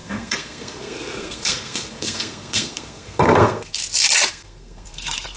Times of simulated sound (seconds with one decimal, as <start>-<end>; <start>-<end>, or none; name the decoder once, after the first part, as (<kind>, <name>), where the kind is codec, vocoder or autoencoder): 0.0-3.8 (codec, SNAC); 4.3-5.4